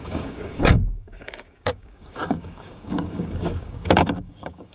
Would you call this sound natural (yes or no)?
no